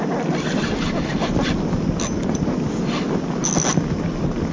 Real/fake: real